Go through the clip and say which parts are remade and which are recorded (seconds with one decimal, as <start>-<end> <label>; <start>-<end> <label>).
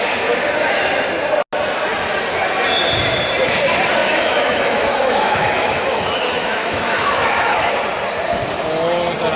0.0-4.0 recorded; 4.0-7.7 remade; 7.7-9.4 recorded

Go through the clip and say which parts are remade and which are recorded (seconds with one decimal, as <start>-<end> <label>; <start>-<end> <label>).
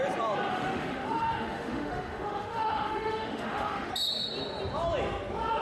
0.0-0.5 recorded; 0.5-3.9 remade; 3.9-5.6 recorded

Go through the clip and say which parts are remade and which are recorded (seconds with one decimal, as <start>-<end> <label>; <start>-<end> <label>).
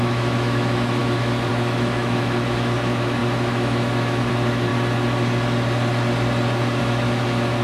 0.0-4.7 remade; 4.7-6.8 recorded; 6.8-7.6 remade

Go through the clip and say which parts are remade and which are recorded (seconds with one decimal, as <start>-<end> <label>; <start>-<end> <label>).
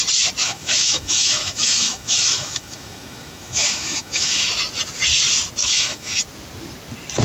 0.0-0.4 recorded; 0.4-4.5 remade; 4.5-5.6 recorded; 5.6-6.2 remade; 6.2-7.2 recorded